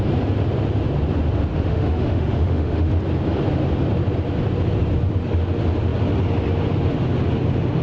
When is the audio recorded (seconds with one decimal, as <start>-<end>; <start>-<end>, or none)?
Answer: 0.0-1.5; 2.9-7.8